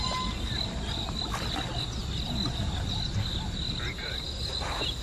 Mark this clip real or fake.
real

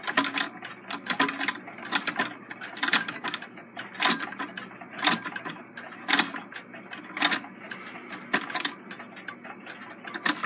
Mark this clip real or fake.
real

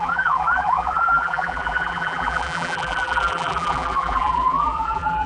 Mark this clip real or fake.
fake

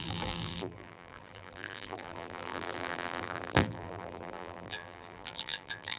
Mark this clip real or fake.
fake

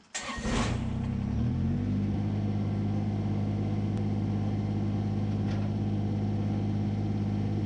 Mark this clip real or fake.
real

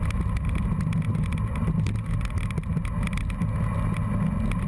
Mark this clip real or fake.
real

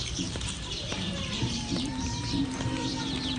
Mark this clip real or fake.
fake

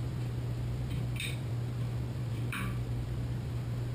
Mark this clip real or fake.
fake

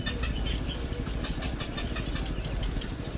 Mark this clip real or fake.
real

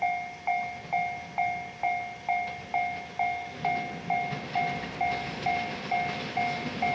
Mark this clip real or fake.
real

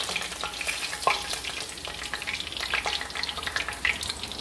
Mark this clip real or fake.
real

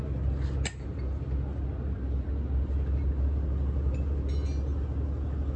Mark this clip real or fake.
real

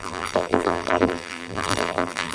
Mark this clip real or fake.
fake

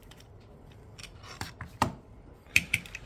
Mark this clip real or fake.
fake